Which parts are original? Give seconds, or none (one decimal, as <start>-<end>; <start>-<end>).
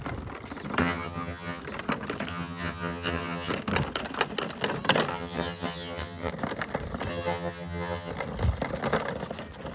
0.0-0.8; 1.6-2.3; 3.5-5.1; 6.3-7.1; 8.1-9.7